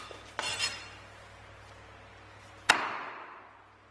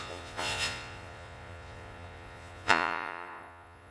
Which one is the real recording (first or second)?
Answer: first